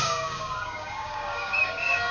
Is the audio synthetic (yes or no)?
yes